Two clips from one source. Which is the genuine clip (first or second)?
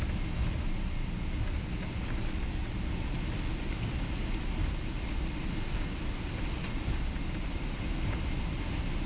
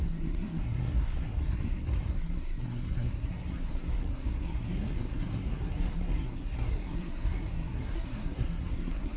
first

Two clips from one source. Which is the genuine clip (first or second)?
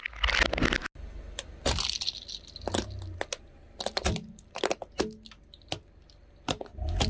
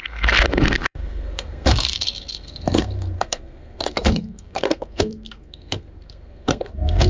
first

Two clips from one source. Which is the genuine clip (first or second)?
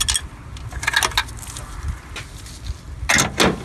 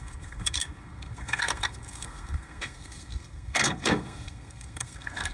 first